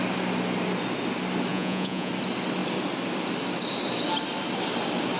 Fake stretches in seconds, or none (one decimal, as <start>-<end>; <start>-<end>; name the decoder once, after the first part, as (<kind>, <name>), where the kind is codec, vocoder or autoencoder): 1.5-2.1 (vocoder, Vocos)